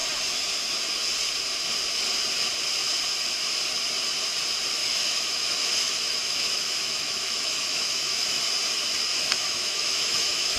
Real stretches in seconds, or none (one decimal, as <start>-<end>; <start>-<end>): 0.0-4.8; 8.4-9.1

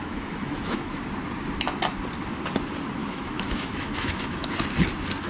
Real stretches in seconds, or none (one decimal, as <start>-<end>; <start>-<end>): 1.0-3.0; 4.5-5.3

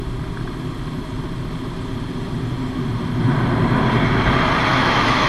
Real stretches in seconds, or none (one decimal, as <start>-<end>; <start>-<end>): 0.0-4.7